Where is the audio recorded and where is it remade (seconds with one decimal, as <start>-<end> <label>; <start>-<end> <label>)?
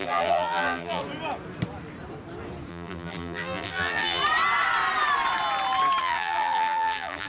0.0-1.0 remade; 1.0-2.7 recorded; 2.7-4.2 remade; 4.2-6.0 recorded; 6.0-7.3 remade